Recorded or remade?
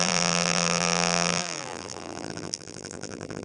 remade